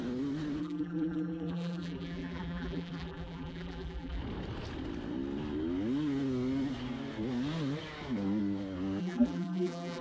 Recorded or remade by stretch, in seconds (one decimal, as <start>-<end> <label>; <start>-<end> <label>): 0.0-0.6 recorded; 0.6-4.2 remade; 4.2-9.0 recorded; 9.0-10.0 remade